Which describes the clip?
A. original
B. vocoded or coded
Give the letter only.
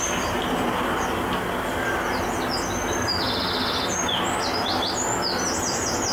A